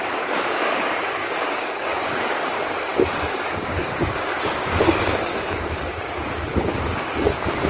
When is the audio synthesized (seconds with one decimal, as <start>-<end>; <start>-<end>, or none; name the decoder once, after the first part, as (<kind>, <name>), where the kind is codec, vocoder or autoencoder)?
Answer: 0.0-7.7 (codec, DAC)